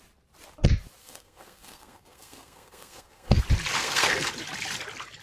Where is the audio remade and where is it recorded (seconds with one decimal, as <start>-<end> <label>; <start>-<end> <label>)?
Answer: 0.0-1.0 recorded; 1.0-3.4 remade; 3.4-3.8 recorded; 3.8-4.3 remade; 4.3-5.2 recorded